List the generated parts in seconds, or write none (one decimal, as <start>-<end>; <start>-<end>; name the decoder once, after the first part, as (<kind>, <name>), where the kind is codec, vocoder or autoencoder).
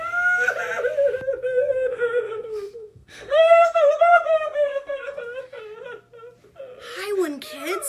1.5-5.6 (codec, SNAC)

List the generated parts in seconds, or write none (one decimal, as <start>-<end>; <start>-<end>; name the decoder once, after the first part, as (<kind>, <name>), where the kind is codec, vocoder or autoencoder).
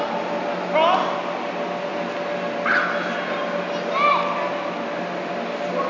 none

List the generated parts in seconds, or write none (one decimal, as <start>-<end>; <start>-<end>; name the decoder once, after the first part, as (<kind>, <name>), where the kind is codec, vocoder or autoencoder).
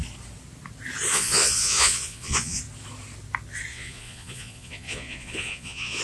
1.1-2.6 (vocoder, Vocos); 3.7-6.0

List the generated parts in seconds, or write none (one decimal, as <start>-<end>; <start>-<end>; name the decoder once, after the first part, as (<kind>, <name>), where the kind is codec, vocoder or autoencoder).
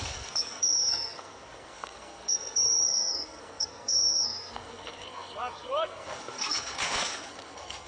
0.0-7.9 (codec, SNAC)